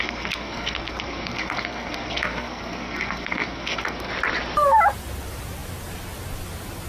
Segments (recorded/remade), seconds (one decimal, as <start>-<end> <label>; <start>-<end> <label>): 0.0-4.1 remade; 4.1-6.9 recorded